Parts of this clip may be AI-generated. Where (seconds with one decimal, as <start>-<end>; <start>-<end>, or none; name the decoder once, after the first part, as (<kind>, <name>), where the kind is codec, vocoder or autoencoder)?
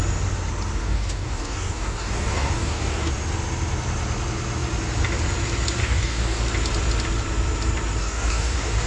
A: 0.8-3.1 (codec, DAC); 5.8-6.4; 8.0-8.9